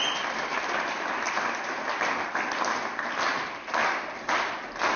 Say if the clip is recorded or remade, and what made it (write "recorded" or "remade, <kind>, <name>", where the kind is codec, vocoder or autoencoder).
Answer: recorded